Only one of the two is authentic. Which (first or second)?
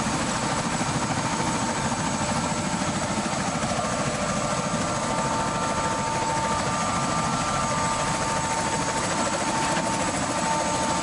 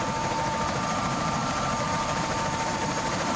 first